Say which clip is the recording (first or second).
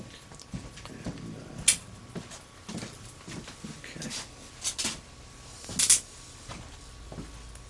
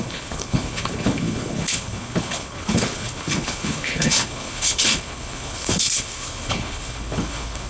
first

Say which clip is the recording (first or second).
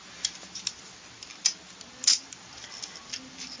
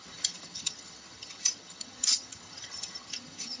first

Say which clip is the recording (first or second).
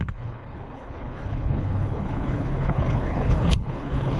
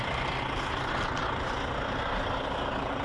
second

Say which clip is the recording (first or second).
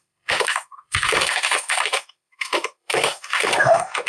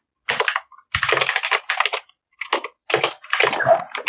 second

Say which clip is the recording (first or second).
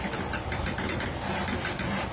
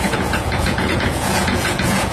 first